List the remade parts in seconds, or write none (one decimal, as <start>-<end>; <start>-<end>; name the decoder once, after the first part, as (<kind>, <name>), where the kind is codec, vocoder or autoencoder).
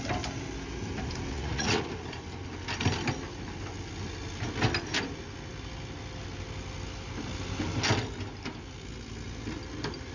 1.3-1.9 (vocoder, Vocos)